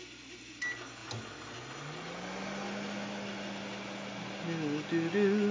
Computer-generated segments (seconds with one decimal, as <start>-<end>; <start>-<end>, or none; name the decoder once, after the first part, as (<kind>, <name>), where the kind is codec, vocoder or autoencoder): none